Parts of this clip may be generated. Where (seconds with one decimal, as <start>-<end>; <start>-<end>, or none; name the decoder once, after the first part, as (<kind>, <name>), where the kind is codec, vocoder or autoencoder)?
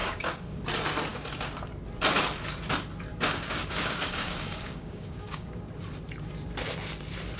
0.0-0.6 (codec, DAC); 3.1-5.7